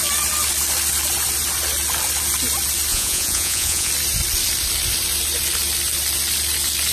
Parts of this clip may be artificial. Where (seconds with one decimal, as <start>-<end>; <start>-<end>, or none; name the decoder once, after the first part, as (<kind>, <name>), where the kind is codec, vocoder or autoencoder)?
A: 2.9-3.9 (vocoder, Vocos)